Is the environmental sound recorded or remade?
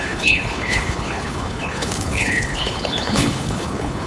remade